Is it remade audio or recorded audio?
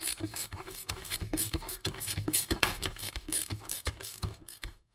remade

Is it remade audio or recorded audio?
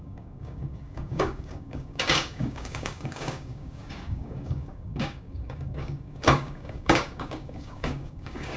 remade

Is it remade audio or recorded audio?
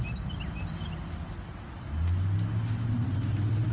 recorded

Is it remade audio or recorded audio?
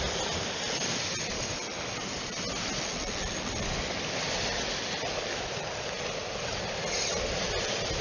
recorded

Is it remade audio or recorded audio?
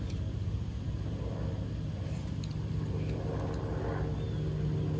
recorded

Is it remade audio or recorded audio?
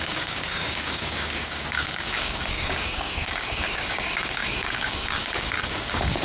remade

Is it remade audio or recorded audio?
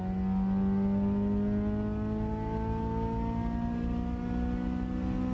recorded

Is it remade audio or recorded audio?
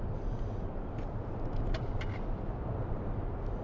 recorded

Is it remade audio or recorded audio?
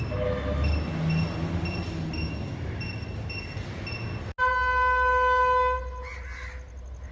recorded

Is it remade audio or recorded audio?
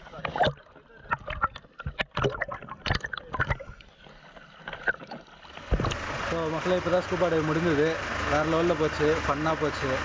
recorded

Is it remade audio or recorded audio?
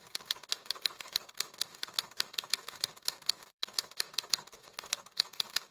remade